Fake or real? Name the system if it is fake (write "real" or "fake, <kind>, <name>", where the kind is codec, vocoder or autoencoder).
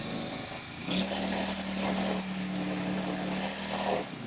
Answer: real